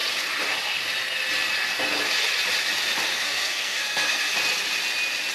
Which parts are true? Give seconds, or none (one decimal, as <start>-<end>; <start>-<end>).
0.0-3.1; 4.3-5.3